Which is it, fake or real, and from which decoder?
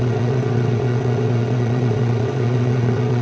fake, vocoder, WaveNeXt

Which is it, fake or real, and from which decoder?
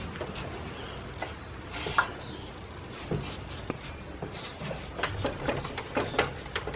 real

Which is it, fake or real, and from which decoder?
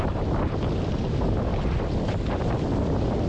real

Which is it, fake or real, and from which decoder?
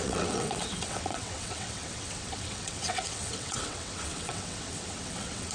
fake, vocoder, WaveNeXt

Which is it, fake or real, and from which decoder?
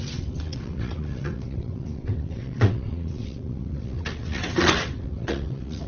fake, vocoder, WaveNeXt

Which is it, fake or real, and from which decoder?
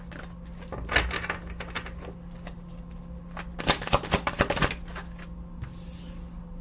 real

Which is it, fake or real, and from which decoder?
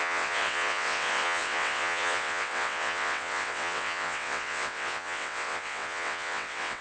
fake, vocoder, WaveNeXt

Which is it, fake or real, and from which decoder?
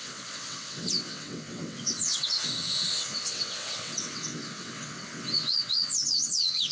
fake, vocoder, WaveNeXt